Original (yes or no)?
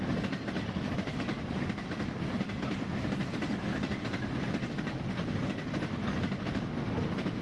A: yes